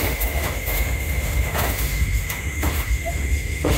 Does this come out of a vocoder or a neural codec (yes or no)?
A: yes